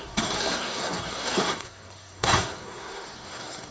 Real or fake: fake